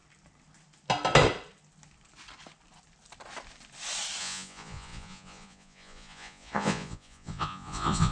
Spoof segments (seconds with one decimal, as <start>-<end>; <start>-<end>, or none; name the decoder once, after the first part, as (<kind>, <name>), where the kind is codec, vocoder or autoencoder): 4.2-8.1 (vocoder, Vocos)